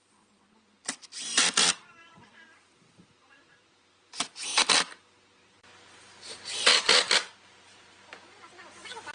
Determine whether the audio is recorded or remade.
remade